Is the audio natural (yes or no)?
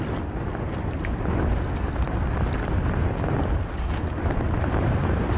yes